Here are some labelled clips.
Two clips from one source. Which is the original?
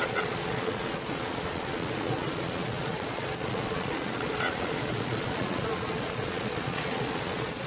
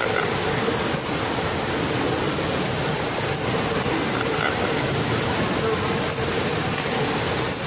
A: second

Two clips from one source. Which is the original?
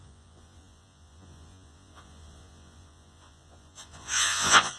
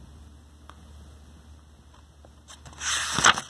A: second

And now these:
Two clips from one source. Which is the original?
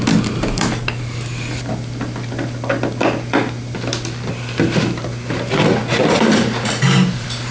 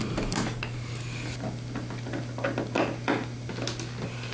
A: second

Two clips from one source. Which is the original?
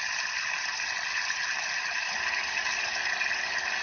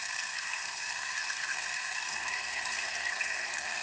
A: first